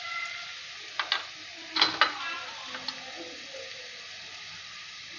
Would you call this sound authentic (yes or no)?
yes